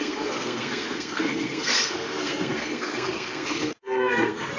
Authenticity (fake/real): fake